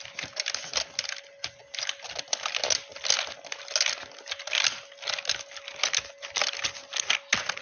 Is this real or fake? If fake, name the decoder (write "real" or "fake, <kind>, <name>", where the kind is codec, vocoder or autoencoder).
real